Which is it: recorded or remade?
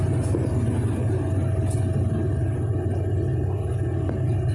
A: recorded